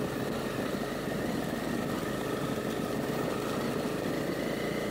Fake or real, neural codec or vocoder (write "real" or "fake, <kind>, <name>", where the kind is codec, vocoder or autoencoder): real